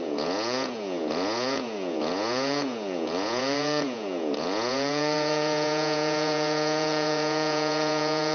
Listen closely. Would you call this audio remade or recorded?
remade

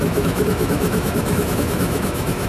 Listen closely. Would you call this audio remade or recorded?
remade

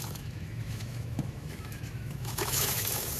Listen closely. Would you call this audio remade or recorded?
remade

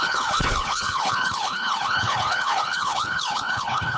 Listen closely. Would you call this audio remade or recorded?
remade